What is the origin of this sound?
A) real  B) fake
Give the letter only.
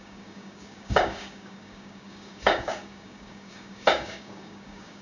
B